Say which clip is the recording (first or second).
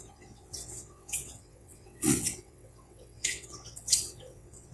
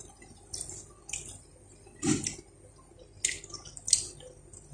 second